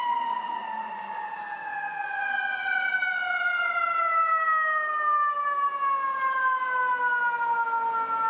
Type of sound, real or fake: real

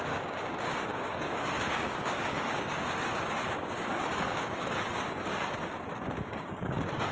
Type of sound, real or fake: fake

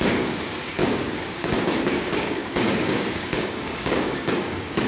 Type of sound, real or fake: fake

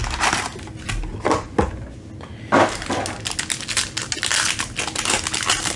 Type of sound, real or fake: real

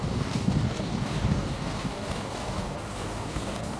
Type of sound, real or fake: fake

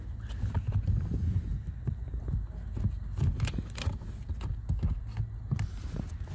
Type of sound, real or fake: real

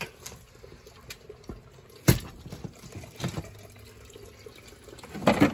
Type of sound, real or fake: real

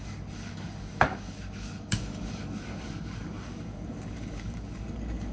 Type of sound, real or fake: fake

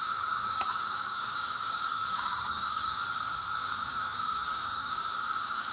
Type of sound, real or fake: fake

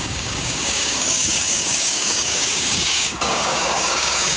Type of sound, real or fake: fake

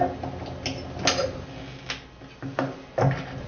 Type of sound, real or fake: real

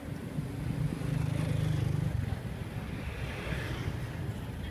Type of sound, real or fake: real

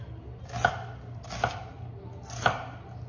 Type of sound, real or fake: real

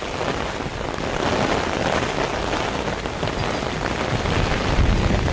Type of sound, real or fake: real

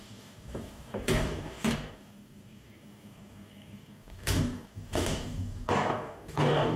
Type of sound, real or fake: fake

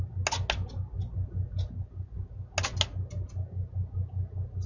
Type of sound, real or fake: real